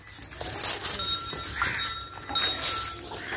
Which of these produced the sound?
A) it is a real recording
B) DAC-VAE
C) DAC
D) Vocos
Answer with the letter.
A